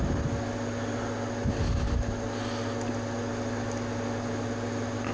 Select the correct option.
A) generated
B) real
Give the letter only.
B